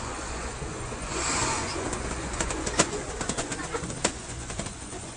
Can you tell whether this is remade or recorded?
remade